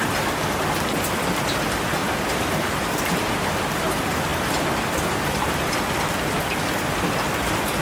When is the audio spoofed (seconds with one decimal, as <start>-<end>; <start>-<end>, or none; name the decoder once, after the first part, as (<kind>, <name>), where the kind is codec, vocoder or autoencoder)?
2.0-3.1 (vocoder, BigVGAN v2)